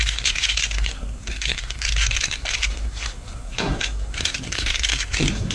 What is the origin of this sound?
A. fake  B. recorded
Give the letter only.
A